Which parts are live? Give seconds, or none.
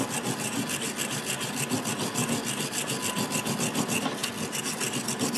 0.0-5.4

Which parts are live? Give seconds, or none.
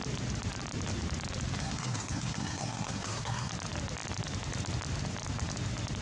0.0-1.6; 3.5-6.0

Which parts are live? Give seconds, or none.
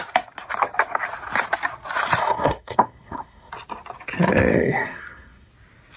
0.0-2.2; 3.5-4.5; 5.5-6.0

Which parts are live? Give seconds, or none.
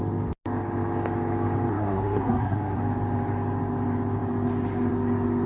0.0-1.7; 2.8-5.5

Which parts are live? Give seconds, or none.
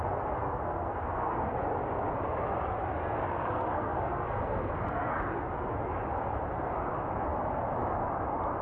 0.0-0.4; 1.6-3.0; 5.2-8.6